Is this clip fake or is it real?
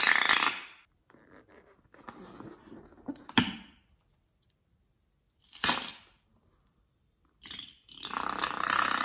real